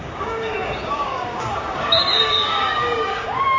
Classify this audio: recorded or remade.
remade